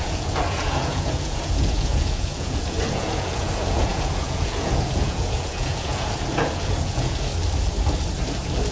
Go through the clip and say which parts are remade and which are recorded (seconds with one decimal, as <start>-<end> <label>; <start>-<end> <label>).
0.0-7.3 remade; 7.3-8.7 recorded